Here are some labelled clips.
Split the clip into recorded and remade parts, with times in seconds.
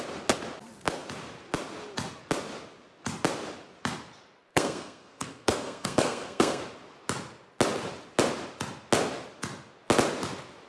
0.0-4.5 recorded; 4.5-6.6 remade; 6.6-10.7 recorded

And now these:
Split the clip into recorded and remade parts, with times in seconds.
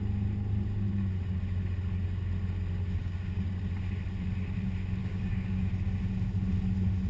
0.0-3.0 recorded; 3.0-3.6 remade; 3.6-5.0 recorded; 5.0-5.7 remade; 5.7-7.1 recorded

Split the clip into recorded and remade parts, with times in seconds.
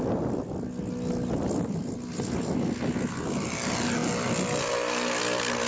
0.0-5.7 recorded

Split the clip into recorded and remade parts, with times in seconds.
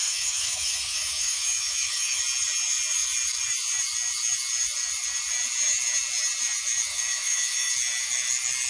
0.0-2.2 remade; 2.2-6.9 recorded; 6.9-7.7 remade; 7.7-8.7 recorded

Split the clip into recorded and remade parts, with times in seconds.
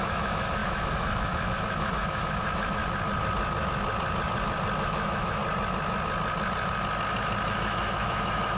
0.0-2.8 remade; 2.8-4.8 recorded; 4.8-5.4 remade; 5.4-7.5 recorded; 7.5-8.6 remade